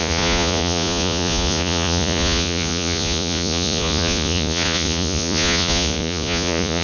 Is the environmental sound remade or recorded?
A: remade